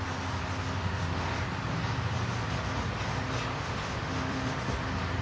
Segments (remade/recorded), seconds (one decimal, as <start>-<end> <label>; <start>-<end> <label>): 0.0-0.8 recorded; 0.8-1.4 remade; 1.4-3.5 recorded; 3.5-4.6 remade; 4.6-5.2 recorded